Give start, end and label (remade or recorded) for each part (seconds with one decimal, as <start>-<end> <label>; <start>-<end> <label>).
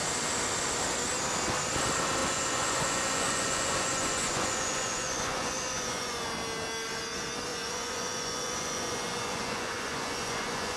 0.0-2.2 recorded; 2.2-6.3 remade; 6.3-7.5 recorded; 7.5-10.8 remade